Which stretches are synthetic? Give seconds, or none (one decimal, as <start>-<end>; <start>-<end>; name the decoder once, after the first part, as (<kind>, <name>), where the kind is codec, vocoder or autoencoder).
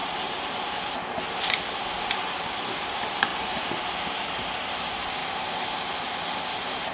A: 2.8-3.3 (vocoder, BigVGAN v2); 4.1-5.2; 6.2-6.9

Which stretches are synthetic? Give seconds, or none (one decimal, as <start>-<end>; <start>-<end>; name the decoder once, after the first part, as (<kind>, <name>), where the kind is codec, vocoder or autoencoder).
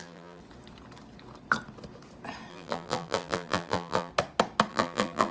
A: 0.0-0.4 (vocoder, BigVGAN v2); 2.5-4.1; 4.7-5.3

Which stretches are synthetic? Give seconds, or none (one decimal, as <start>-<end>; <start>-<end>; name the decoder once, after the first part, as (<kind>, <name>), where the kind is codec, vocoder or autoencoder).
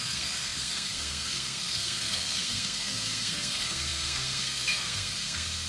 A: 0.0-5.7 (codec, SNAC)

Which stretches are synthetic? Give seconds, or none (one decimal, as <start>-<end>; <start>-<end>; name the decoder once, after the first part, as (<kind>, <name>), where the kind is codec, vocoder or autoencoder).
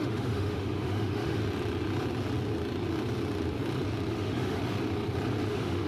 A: 0.0-1.4 (autoencoder, DAC-VAE); 4.1-4.6; 5.5-5.9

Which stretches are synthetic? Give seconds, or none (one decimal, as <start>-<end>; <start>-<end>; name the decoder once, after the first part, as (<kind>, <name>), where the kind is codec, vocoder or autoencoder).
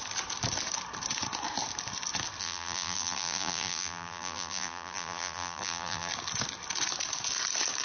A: 2.4-6.1 (vocoder, BigVGAN v2)